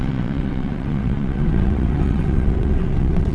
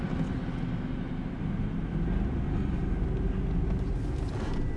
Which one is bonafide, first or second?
second